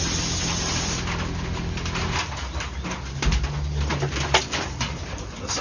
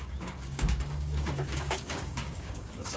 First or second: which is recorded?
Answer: first